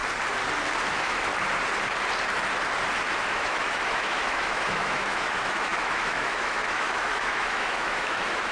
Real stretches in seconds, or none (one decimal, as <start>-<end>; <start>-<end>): 0.0-0.9; 1.3-3.2